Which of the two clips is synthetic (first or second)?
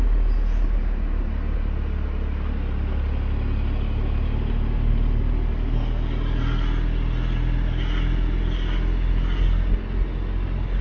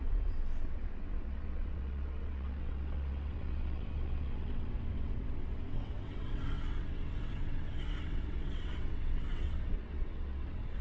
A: second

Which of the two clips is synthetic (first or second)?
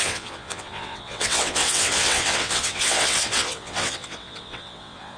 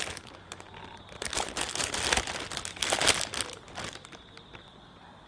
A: first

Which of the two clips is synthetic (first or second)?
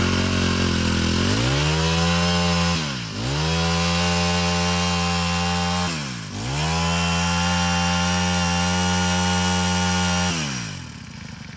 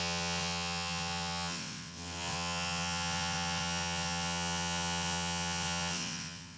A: second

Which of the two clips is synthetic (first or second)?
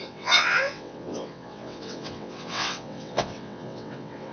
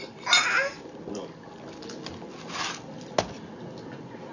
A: first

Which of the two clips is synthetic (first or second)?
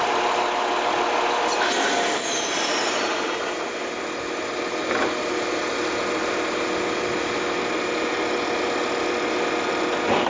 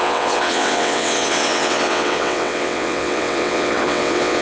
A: second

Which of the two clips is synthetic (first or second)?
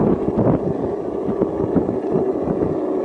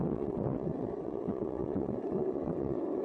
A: second